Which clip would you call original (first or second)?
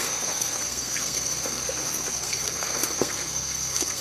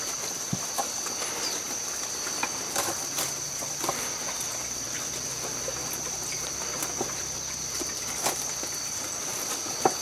second